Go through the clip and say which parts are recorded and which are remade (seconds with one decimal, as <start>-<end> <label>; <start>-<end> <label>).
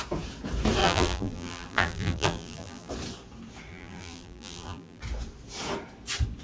0.0-0.8 recorded; 0.8-2.9 remade; 2.9-3.7 recorded; 3.7-5.0 remade; 5.0-6.4 recorded